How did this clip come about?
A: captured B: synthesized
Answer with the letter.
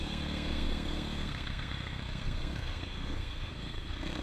B